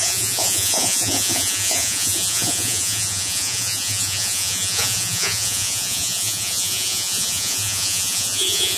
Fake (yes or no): yes